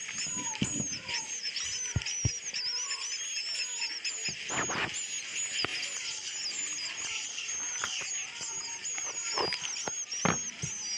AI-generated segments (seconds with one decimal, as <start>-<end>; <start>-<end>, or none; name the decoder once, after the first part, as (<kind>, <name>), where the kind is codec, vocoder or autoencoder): none